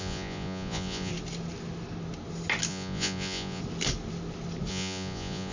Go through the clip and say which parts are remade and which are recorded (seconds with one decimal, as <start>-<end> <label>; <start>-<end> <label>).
0.0-1.1 remade; 1.1-2.7 recorded; 2.7-3.6 remade; 3.6-4.7 recorded; 4.7-5.5 remade